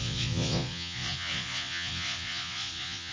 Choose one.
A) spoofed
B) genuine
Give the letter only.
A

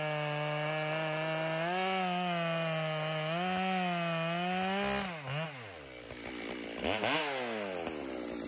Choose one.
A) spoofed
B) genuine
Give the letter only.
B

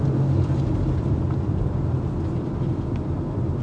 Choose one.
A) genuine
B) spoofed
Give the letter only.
A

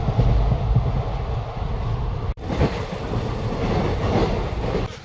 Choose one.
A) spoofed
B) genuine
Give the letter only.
B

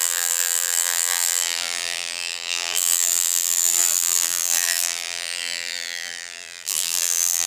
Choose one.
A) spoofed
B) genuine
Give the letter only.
A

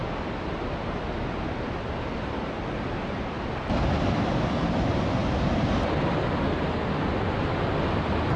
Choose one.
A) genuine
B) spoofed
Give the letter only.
A